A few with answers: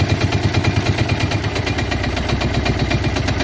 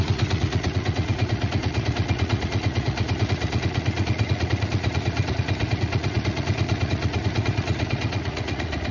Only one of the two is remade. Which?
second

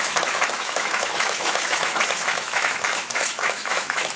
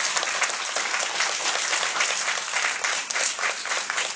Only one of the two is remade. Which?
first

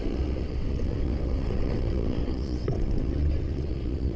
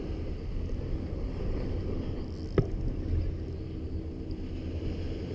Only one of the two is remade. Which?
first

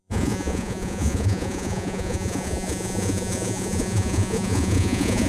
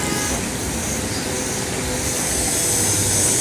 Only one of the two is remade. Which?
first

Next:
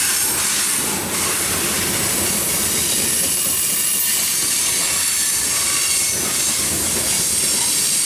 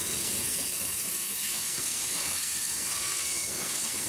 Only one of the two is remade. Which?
second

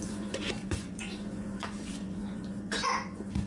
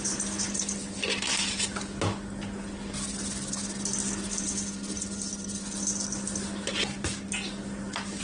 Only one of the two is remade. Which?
first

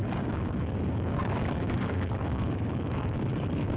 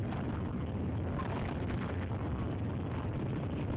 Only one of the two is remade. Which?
first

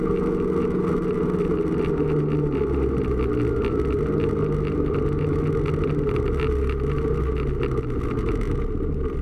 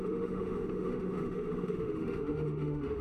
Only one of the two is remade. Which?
second